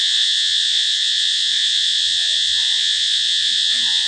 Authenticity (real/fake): fake